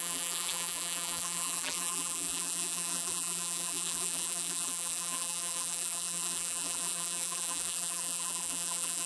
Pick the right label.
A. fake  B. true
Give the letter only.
A